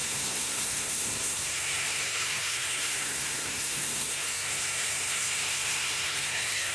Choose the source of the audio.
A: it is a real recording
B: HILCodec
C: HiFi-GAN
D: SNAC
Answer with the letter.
D